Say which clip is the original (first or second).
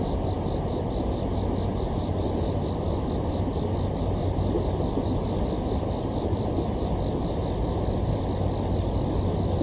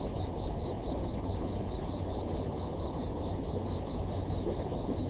first